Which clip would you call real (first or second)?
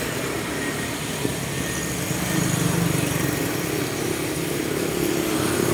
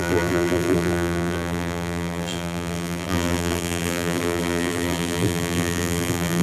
first